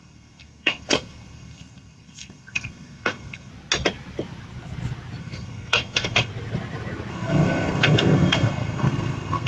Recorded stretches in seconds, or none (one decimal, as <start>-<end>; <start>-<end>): 3.5-5.2; 6.3-7.1